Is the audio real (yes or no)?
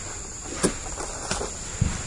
yes